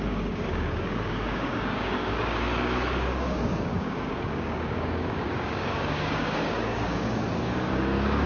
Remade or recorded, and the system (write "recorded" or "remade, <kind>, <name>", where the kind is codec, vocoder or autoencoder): remade, codec, DAC